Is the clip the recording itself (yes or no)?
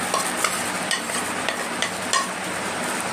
yes